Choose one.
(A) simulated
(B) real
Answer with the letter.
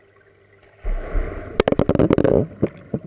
B